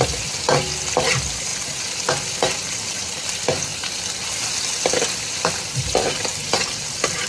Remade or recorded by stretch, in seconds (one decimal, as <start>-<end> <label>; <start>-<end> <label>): 0.0-7.3 recorded